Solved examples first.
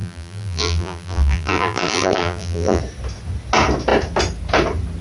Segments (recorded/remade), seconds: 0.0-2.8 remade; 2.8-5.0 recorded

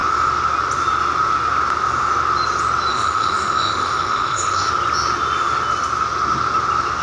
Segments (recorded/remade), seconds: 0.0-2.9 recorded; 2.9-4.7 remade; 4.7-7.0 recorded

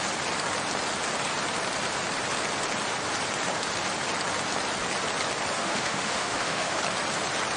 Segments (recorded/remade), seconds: 0.0-5.6 recorded; 5.6-6.8 remade; 6.8-7.6 recorded